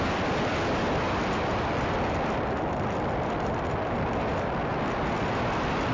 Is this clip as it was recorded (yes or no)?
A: yes